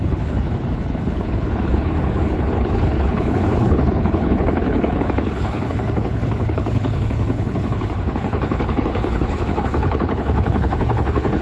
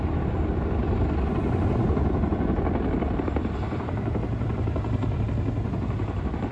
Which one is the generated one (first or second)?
first